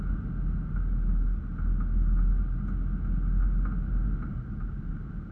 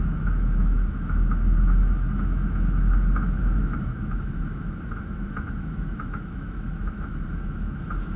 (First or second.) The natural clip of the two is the first